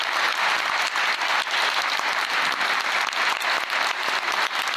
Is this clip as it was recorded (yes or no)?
yes